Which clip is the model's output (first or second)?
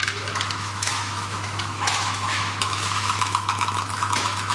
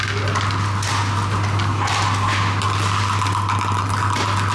first